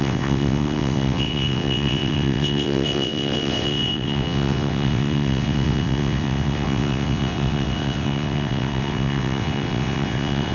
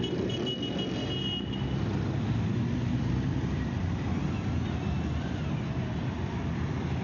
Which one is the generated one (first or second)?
first